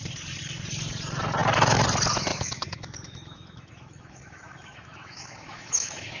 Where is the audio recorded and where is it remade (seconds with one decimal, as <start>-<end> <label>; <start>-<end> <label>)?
0.0-2.3 recorded; 2.3-6.2 remade